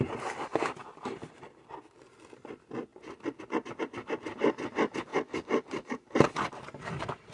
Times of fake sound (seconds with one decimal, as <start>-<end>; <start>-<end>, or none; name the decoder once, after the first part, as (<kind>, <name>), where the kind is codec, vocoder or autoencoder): 5.1-6.8 (vocoder, BigVGAN v2)